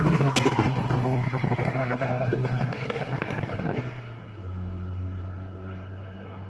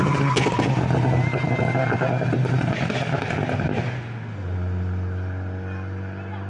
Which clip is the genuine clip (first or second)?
second